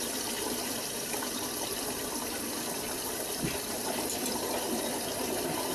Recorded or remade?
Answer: remade